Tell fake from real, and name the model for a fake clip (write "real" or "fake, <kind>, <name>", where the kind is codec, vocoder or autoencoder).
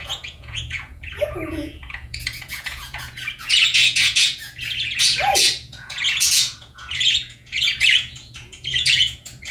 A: fake, vocoder, Vocos